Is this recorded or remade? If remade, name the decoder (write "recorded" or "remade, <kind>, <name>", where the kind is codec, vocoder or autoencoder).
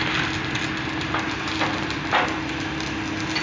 recorded